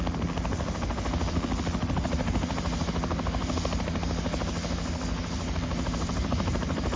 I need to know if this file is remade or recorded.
recorded